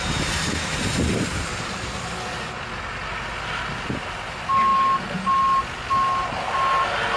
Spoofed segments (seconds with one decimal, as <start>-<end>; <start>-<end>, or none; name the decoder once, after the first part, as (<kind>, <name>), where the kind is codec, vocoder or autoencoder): none